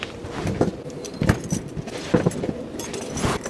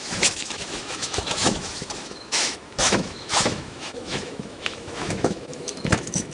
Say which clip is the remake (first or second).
second